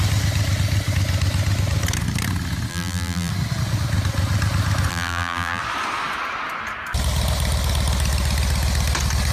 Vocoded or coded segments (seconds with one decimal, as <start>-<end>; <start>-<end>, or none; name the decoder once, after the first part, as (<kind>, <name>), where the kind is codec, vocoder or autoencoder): 2.7-3.3 (vocoder, BigVGAN v2); 4.9-5.6